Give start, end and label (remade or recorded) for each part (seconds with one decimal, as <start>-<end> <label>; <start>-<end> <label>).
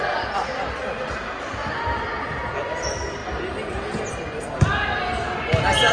0.0-5.9 recorded